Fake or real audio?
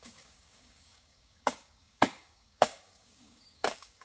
fake